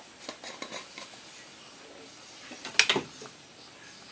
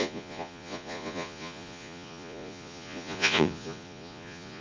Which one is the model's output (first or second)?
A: second